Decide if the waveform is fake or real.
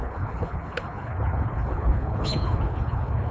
fake